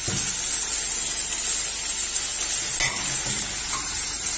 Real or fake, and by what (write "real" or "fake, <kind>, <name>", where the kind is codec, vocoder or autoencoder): real